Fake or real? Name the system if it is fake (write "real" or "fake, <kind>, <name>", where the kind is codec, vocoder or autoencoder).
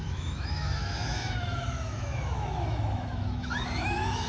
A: fake, autoencoder, DAC-VAE